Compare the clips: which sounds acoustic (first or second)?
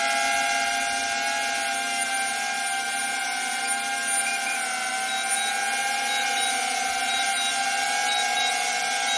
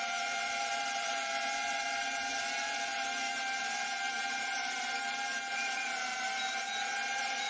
first